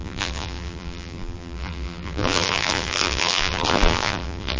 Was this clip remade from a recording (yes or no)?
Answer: yes